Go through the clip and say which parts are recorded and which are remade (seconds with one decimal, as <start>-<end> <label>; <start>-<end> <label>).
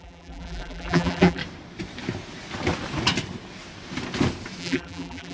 0.0-1.4 remade; 1.4-4.6 recorded; 4.6-5.3 remade